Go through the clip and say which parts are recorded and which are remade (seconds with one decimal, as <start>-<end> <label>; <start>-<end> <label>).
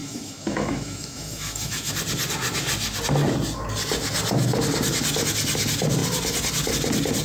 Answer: 0.0-1.9 remade; 1.9-7.2 recorded